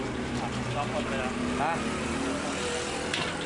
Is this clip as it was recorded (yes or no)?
yes